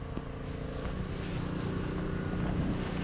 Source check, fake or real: real